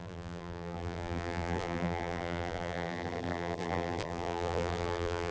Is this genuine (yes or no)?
no